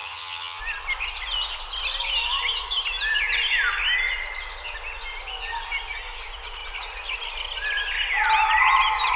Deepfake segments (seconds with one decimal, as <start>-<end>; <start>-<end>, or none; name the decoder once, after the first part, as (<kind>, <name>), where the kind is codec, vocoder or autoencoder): 0.0-0.6 (vocoder, HiFi-GAN)